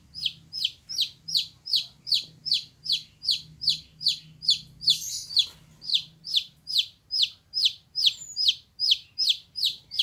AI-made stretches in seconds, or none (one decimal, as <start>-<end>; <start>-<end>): 5.9-10.0